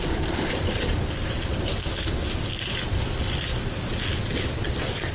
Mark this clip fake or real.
real